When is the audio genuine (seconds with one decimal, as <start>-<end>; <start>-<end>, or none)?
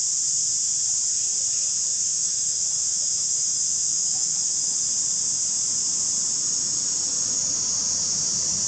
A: 0.0-1.9; 4.8-8.7